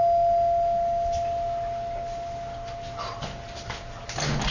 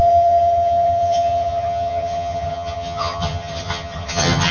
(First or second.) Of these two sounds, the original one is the first